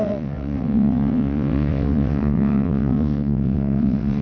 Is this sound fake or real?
fake